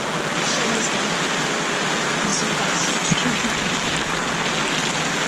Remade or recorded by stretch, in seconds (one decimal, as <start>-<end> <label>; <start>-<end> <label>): 0.0-2.3 recorded; 2.3-3.9 remade; 3.9-5.3 recorded